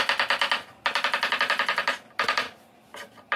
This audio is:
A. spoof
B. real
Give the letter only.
B